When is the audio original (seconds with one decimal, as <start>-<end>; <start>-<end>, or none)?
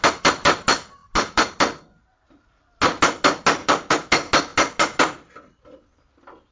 0.0-6.5